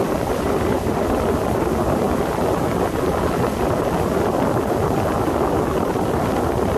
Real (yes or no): yes